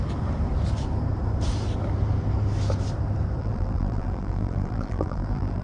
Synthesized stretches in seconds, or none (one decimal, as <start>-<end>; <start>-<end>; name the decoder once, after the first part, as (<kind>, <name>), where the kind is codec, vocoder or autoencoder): 3.4-5.6 (vocoder, BigVGAN v2)